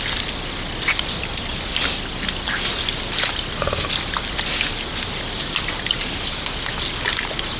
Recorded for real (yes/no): yes